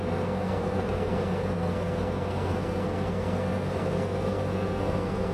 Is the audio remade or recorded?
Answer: remade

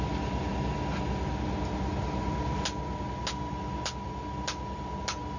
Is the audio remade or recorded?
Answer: recorded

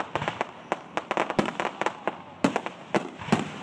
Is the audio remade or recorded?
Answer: recorded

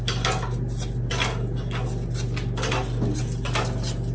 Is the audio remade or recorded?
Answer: recorded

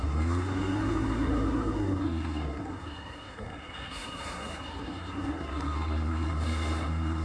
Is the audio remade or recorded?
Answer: remade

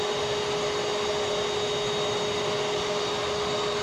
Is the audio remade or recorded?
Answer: recorded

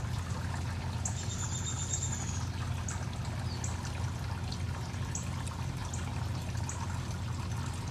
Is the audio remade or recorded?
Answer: recorded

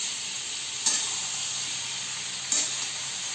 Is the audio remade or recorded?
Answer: recorded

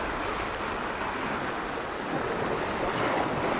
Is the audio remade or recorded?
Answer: recorded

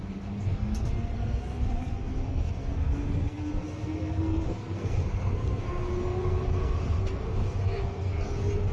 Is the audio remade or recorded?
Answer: remade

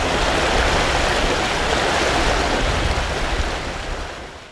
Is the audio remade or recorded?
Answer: recorded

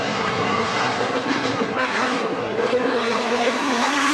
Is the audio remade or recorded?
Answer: remade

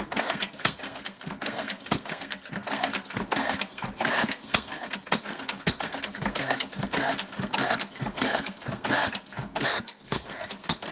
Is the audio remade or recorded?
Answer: remade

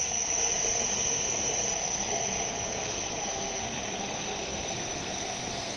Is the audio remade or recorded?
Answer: remade